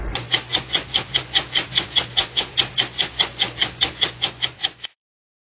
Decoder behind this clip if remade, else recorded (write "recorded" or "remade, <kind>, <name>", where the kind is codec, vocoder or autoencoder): remade, vocoder, Vocos